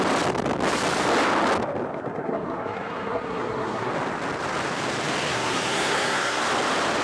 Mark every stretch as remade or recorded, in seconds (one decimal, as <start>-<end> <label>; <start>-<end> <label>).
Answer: 0.0-1.9 recorded; 1.9-3.9 remade; 3.9-5.3 recorded; 5.3-6.4 remade; 6.4-7.0 recorded